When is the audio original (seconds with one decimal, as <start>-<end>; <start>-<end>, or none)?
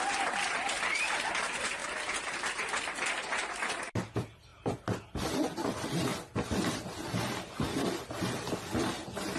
0.0-9.4